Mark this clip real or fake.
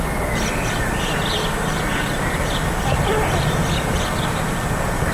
real